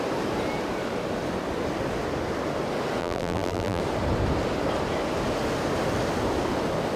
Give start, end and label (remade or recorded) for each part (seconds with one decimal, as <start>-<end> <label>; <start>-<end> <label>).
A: 0.0-3.0 recorded; 3.0-3.8 remade; 3.8-7.0 recorded